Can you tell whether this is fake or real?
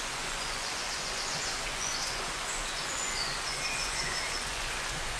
fake